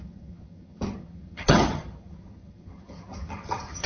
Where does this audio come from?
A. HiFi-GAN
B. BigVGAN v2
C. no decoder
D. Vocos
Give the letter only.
A